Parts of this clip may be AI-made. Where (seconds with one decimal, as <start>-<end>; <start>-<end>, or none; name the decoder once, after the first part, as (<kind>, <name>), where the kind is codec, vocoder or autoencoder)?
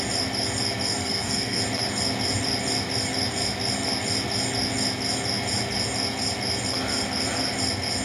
1.0-1.6 (codec, SNAC)